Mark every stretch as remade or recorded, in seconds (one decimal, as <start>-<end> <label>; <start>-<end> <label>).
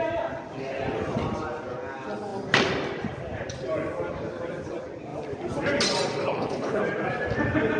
0.0-6.2 recorded; 6.2-6.8 remade; 6.8-7.8 recorded